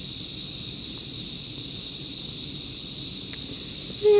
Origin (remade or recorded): recorded